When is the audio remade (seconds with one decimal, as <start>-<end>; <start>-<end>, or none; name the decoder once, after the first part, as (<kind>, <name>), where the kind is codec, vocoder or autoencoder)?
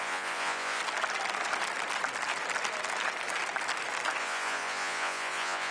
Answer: 0.0-0.8 (vocoder, Vocos); 4.2-5.7